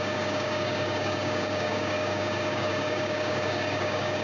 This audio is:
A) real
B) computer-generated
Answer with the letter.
B